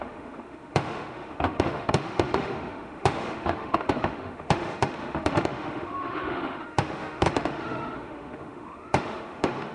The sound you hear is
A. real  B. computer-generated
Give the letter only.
B